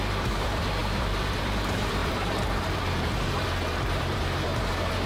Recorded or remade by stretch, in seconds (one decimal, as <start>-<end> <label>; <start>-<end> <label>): 0.0-4.5 remade; 4.5-5.1 recorded